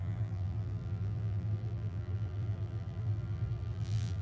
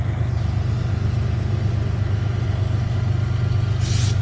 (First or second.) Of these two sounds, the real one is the second